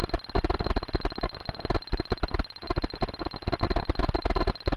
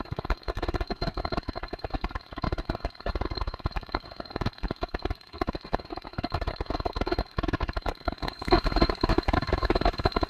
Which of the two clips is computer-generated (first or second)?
second